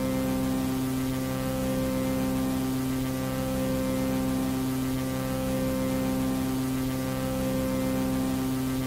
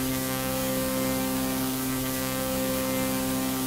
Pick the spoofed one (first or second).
second